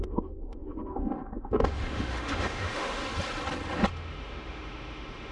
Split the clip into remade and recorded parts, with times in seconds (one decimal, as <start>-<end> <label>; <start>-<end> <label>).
0.0-3.0 remade; 3.0-3.9 recorded; 3.9-5.3 remade